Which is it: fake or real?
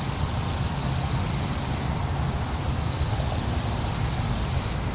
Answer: real